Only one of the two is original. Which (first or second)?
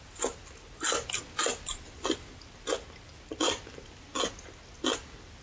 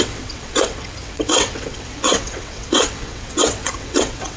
first